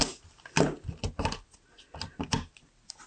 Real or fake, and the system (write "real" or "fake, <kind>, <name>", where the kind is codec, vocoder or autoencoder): real